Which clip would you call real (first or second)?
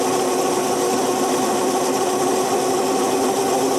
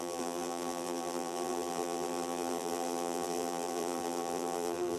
first